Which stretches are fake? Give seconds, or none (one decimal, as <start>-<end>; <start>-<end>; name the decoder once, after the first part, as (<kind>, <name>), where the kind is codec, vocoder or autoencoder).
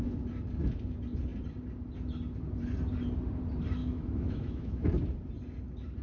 3.8-4.9 (autoencoder, DAC-VAE)